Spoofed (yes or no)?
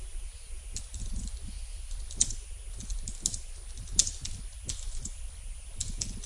no